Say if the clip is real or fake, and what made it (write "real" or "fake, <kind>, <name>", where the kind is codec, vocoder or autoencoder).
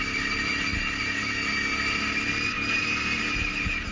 real